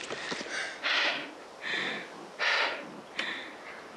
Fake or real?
real